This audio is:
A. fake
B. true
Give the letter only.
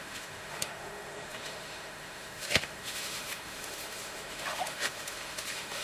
A